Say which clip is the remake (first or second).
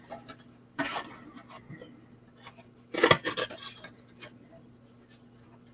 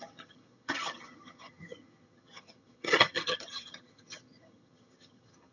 second